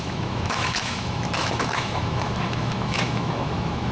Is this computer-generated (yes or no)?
yes